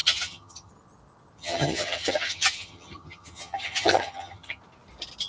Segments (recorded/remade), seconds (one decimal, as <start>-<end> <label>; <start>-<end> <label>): 0.0-0.7 remade; 0.7-1.4 recorded; 1.4-4.6 remade; 4.6-5.3 recorded